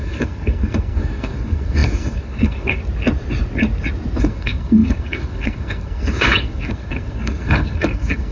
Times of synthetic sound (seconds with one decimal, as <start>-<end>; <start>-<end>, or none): 0.0-2.8; 4.2-8.3